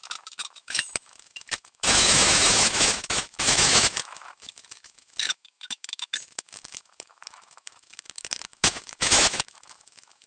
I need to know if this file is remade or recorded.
remade